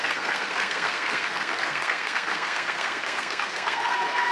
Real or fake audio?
fake